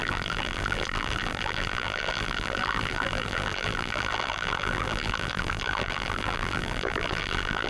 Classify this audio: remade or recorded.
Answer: remade